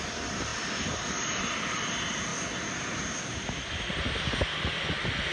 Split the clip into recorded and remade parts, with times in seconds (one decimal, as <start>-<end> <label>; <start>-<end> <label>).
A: 0.0-5.3 recorded